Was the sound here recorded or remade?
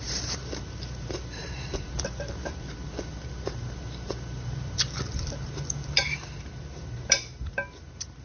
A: remade